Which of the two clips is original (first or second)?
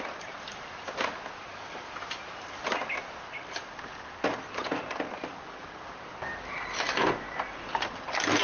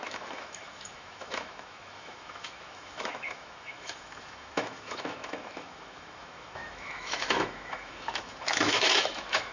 first